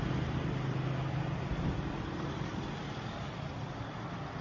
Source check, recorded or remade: recorded